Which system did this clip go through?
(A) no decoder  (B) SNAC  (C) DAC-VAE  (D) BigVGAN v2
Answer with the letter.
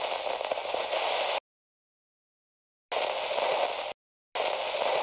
A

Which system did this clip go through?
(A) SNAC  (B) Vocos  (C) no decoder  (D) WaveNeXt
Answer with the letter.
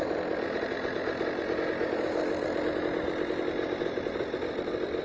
C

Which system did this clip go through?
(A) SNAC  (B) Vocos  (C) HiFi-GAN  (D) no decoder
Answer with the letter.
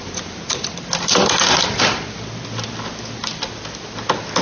D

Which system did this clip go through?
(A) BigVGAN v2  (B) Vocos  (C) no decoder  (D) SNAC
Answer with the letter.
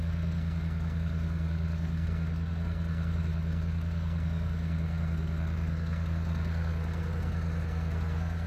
D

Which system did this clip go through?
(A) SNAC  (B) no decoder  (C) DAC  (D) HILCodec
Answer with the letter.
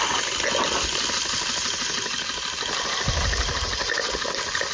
B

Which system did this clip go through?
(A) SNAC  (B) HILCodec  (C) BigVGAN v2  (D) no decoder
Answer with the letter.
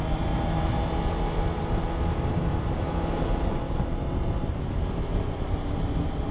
D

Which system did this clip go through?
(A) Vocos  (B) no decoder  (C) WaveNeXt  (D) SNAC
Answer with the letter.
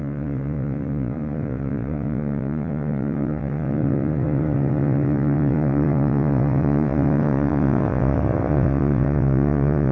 C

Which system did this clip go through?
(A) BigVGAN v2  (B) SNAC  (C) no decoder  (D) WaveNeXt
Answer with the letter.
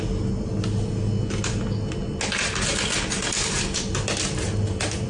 C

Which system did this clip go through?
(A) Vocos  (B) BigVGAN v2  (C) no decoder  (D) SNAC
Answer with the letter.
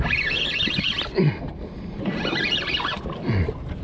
C